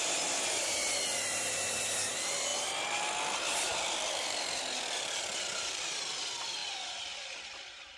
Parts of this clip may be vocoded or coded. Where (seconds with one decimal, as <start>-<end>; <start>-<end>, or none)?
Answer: 0.0-6.6; 7.2-8.0